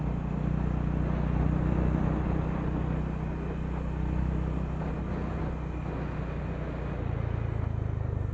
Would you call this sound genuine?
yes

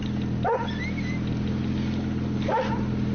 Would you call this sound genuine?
yes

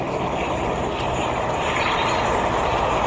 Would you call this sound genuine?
yes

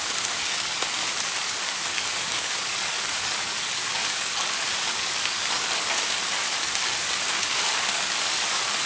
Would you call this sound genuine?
no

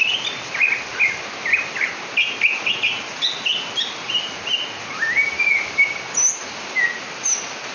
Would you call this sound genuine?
yes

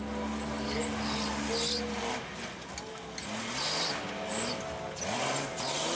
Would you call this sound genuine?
yes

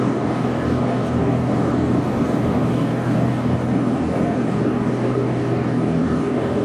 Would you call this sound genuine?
no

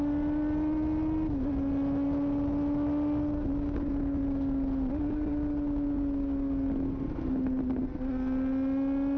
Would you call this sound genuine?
yes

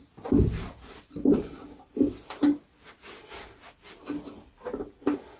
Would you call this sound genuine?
yes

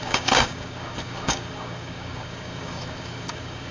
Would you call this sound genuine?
no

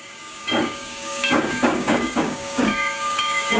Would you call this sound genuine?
no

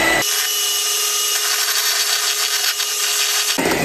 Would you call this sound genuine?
yes